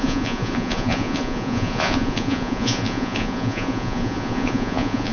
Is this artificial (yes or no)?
yes